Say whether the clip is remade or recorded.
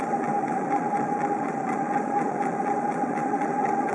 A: remade